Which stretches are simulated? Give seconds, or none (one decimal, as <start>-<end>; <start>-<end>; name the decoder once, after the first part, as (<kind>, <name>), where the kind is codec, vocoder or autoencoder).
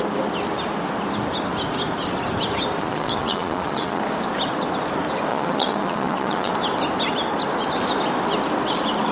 2.8-4.0 (vocoder, Vocos); 5.3-6.5